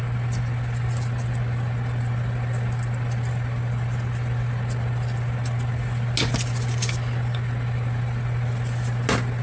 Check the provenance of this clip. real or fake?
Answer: real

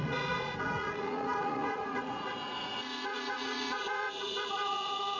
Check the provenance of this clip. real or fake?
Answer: fake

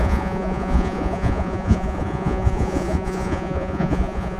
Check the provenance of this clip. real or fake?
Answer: fake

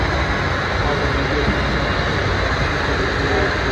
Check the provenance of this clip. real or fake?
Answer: real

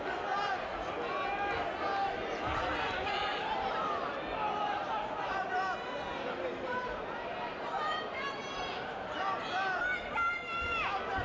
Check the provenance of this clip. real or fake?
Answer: real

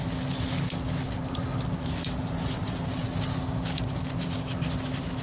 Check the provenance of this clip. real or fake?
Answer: real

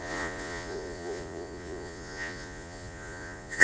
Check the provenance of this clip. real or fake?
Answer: fake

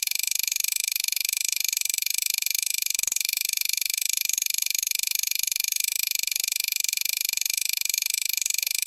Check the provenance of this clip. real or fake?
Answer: fake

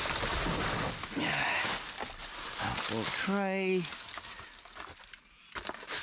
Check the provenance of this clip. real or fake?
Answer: real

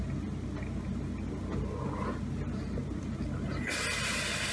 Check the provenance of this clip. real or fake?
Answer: real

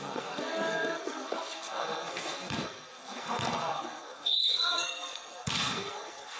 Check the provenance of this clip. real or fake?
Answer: fake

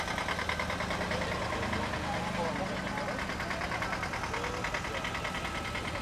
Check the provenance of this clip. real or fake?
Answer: real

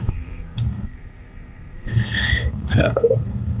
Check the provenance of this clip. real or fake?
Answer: fake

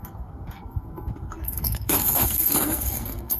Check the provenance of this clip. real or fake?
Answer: fake